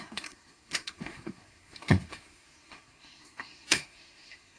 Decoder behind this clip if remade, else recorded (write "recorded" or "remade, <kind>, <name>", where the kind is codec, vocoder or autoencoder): remade, codec, SNAC